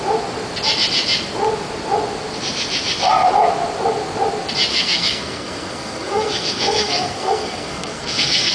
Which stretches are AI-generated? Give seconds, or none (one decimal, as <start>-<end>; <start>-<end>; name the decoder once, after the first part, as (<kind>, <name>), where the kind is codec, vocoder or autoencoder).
4.7-8.5 (codec, SNAC)